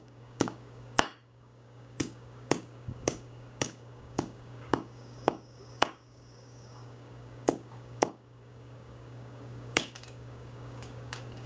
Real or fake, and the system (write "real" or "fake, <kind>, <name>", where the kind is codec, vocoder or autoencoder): fake, codec, DAC